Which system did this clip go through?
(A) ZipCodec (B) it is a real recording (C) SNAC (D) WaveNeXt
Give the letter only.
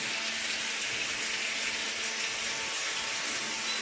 B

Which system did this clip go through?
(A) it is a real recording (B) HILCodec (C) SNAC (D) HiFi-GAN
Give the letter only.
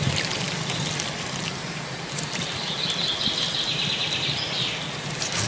A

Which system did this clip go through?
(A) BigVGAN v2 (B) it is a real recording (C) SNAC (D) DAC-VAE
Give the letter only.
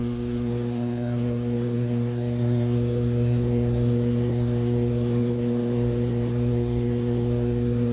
C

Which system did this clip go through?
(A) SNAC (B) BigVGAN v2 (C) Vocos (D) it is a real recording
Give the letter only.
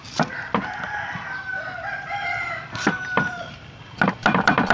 B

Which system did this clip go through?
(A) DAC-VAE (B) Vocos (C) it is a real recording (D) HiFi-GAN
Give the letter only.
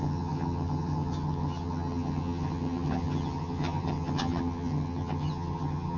D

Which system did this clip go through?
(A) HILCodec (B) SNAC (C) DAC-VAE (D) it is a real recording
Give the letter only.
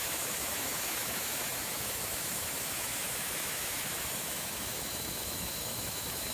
C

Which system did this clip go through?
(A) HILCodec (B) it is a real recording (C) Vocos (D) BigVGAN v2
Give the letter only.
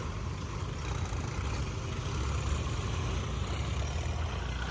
B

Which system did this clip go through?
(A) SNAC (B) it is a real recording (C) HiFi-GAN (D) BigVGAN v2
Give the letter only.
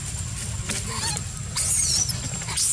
B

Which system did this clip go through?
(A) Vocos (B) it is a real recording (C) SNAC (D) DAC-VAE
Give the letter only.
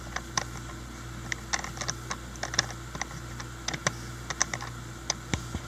B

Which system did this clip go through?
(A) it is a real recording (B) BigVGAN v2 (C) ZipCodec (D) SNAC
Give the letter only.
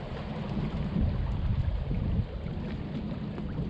A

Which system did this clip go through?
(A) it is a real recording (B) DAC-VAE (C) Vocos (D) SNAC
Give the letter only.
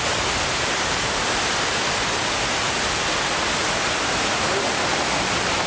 A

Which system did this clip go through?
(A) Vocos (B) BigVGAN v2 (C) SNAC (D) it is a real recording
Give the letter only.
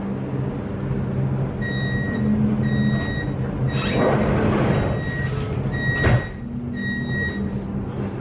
D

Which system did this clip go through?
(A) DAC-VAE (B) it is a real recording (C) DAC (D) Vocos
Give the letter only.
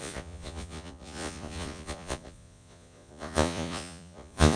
D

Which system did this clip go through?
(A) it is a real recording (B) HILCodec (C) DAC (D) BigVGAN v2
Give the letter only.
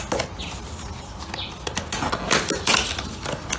A